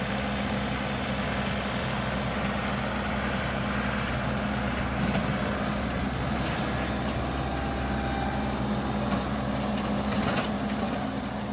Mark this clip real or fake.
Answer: real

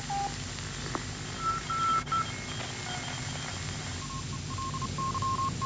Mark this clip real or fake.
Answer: real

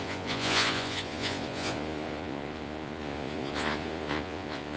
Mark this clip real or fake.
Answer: fake